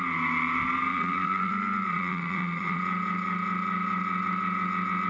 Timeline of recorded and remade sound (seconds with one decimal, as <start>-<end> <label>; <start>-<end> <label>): 0.0-0.9 recorded; 0.9-1.5 remade; 1.5-1.9 recorded; 1.9-2.8 remade; 2.8-5.1 recorded